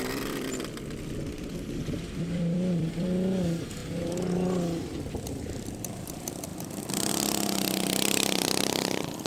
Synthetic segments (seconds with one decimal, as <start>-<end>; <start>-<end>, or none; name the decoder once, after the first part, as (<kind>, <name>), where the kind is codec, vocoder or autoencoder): 0.0-3.8 (vocoder, BigVGAN v2); 5.0-6.5; 7.1-9.3